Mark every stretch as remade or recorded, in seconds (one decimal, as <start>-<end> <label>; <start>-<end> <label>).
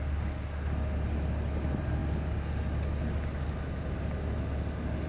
0.0-5.1 recorded